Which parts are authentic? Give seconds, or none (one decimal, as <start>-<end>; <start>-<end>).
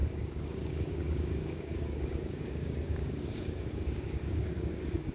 none